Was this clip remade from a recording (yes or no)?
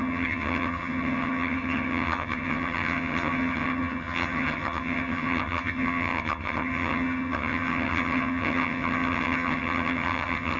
yes